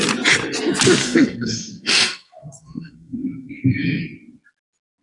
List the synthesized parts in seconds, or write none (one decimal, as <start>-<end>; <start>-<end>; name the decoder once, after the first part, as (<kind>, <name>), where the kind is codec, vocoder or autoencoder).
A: 1.0-4.0 (codec, SNAC)